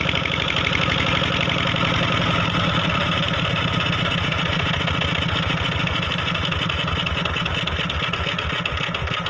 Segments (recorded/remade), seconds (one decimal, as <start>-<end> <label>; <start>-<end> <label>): 0.0-3.0 recorded; 3.0-3.5 remade; 3.5-9.3 recorded